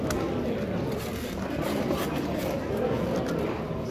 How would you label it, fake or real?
real